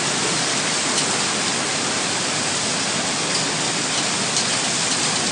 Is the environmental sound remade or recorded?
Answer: recorded